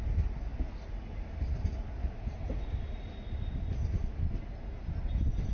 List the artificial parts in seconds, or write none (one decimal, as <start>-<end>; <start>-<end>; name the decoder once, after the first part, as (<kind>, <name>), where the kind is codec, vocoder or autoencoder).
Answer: none